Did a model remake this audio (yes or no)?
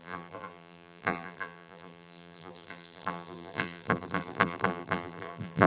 yes